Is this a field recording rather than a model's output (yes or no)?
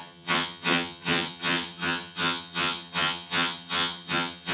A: no